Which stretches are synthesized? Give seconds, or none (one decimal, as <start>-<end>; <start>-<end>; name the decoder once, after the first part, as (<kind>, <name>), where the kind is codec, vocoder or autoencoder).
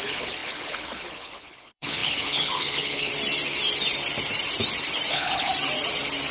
0.0-3.1 (codec, HILCodec); 5.1-5.5